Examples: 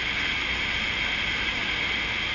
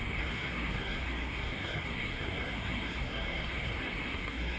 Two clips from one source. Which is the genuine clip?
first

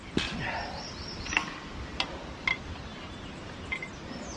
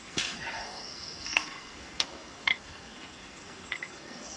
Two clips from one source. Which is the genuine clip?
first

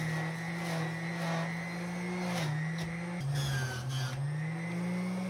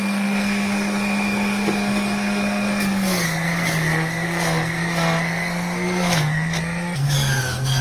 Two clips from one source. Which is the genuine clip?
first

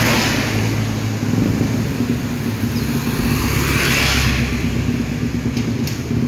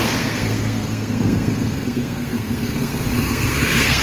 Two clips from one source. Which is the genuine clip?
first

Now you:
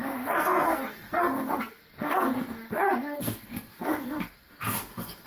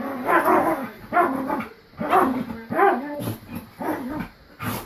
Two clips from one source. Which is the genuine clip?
second